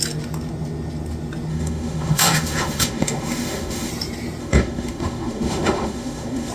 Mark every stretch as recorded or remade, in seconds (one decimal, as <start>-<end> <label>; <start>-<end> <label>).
0.0-1.5 recorded; 1.5-3.9 remade; 3.9-4.4 recorded; 4.4-6.5 remade